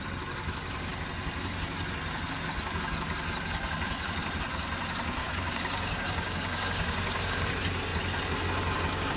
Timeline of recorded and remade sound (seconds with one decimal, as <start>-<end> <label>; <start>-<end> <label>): 0.0-5.2 recorded; 5.2-7.5 remade; 7.5-9.2 recorded